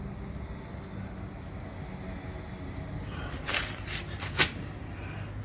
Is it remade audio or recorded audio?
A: recorded